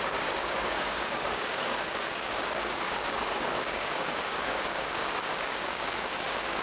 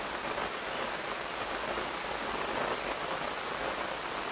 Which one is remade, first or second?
first